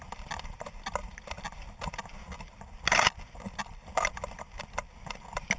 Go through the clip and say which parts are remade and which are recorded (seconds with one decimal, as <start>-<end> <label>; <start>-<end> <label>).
0.0-5.6 recorded